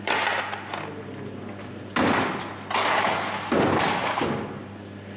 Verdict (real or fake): real